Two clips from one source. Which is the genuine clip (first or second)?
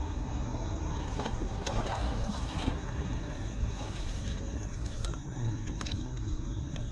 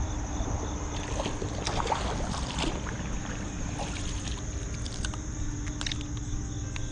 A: second